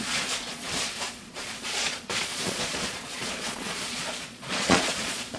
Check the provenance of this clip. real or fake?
fake